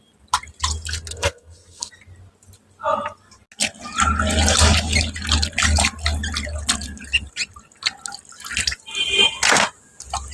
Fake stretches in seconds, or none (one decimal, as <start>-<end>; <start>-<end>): 1.1-1.9

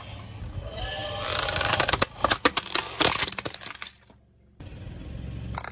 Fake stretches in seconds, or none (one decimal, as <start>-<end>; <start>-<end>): none

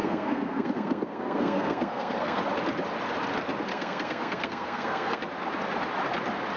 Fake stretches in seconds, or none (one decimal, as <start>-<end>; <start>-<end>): 0.0-2.4; 3.7-5.2

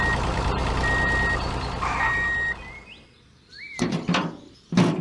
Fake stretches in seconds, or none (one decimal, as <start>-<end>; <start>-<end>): none